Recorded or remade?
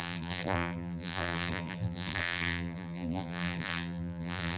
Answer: remade